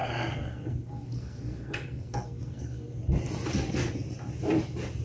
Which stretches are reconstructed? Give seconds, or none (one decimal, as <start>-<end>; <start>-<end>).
0.0-3.0